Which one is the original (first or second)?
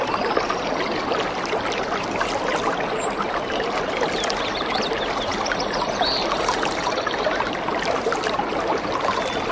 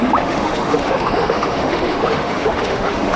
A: first